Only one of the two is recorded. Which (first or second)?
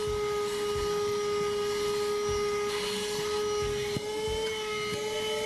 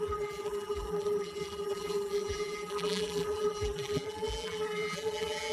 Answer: first